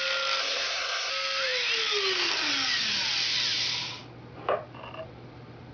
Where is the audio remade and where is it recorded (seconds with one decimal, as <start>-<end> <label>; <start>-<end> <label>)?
0.0-0.4 recorded; 0.4-1.1 remade; 1.1-5.7 recorded